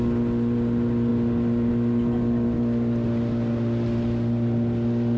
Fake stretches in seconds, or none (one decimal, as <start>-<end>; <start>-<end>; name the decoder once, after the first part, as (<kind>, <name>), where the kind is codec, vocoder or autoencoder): none